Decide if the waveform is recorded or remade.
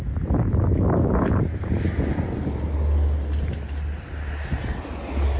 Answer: recorded